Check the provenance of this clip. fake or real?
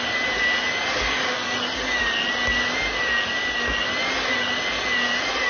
real